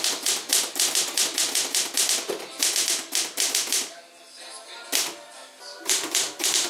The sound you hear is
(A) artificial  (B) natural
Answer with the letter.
A